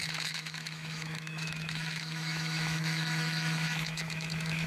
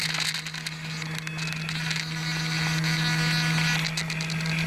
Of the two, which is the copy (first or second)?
first